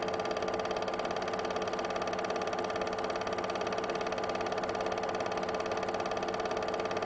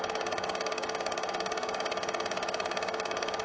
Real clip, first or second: first